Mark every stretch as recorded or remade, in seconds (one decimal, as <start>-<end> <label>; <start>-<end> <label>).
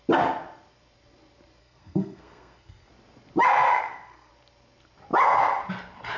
0.0-1.6 recorded; 1.6-2.9 remade; 2.9-3.7 recorded; 3.7-4.3 remade; 4.3-6.2 recorded